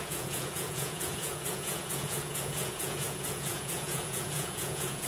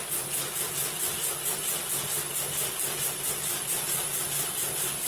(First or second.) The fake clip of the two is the first